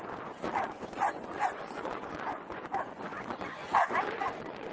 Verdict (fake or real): fake